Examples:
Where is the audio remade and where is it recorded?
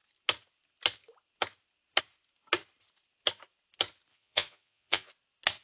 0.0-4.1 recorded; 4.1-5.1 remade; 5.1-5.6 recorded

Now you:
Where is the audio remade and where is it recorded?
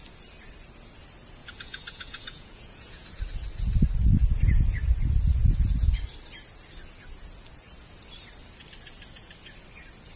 0.0-1.4 recorded; 1.4-3.2 remade; 3.2-10.2 recorded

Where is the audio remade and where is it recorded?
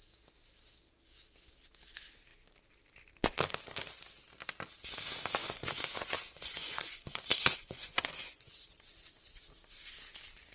0.0-5.4 recorded; 5.4-8.5 remade; 8.5-10.5 recorded